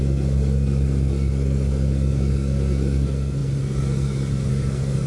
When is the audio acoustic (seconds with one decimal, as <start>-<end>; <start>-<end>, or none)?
none